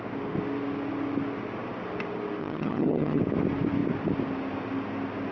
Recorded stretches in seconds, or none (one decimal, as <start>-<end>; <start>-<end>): 0.0-2.4; 3.2-5.3